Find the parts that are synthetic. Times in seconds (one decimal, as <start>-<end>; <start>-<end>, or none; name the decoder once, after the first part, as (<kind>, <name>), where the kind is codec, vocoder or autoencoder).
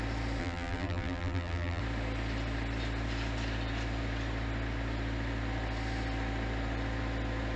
0.4-1.8 (vocoder, BigVGAN v2)